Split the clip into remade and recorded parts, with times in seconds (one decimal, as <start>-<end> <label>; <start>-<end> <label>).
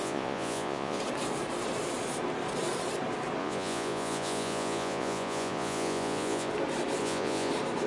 0.0-1.0 remade; 1.0-3.4 recorded; 3.4-6.5 remade; 6.5-7.0 recorded; 7.0-7.5 remade; 7.5-7.9 recorded